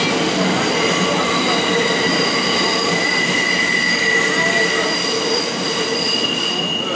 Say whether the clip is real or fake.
real